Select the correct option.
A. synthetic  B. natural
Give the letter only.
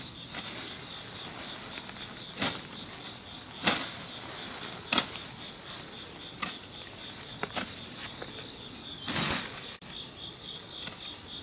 B